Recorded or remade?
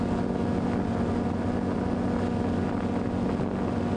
recorded